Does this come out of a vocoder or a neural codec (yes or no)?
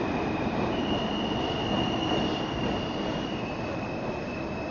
no